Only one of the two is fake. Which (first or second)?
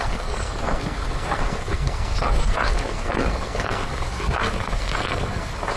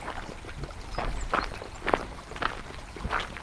first